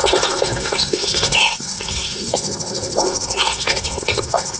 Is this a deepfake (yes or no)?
yes